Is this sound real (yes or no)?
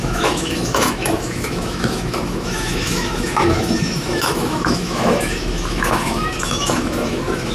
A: no